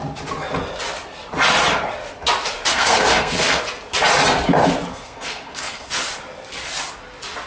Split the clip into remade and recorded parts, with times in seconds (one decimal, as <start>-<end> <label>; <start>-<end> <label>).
0.0-2.7 recorded; 2.7-3.6 remade; 3.6-4.9 recorded; 4.9-5.9 remade; 5.9-7.5 recorded